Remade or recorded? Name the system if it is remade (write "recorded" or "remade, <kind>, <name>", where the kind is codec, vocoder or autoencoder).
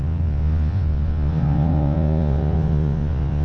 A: remade, vocoder, Vocos